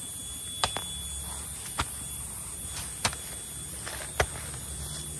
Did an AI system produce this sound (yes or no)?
no